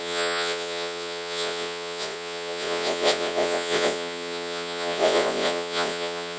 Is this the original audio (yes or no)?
no